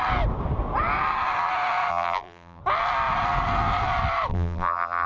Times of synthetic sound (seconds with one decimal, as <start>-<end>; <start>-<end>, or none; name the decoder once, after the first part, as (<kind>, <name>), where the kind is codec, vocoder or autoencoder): 1.9-2.6 (vocoder, BigVGAN v2); 4.3-5.1